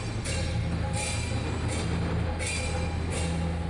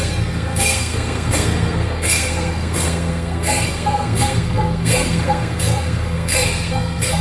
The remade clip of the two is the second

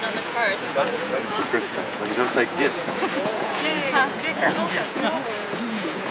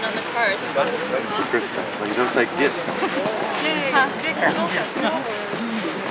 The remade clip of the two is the first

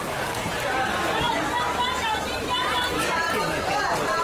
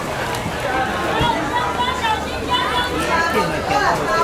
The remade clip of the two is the first